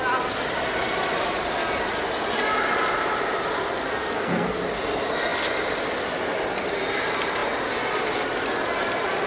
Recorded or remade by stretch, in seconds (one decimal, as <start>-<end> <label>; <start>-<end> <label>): 0.0-3.9 recorded; 3.9-4.6 remade; 4.6-9.3 recorded